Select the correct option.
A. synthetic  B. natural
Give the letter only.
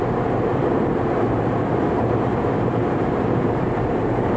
A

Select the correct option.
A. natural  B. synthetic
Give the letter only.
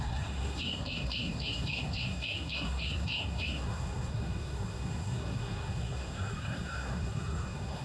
B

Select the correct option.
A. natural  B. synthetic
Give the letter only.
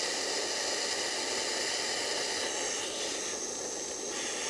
A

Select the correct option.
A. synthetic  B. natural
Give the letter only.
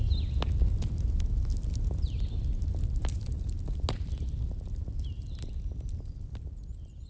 B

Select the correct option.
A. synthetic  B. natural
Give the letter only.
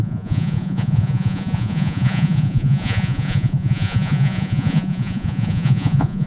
A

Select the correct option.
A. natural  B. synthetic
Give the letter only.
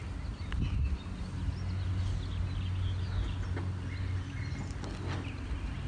A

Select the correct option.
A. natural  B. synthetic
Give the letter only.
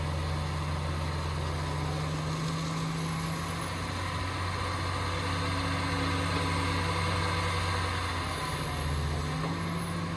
A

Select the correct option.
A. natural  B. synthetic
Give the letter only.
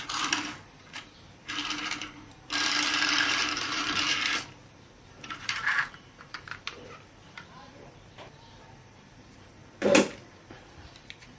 B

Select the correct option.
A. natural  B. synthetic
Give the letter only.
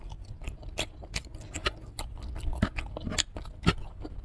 A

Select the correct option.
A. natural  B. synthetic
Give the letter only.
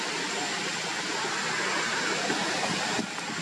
A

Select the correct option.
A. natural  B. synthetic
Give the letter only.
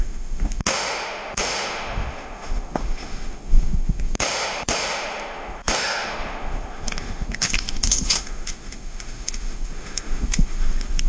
B